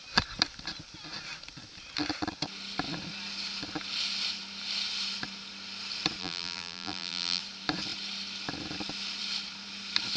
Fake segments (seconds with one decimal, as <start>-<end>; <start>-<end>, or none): 6.2-7.4